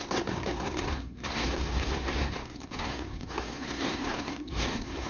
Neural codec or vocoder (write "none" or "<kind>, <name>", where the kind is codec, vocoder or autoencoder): codec, SNAC